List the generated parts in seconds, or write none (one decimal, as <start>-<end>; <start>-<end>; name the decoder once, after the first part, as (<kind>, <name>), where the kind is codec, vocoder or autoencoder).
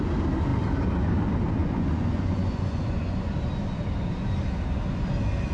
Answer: 1.6-3.3 (vocoder, Vocos)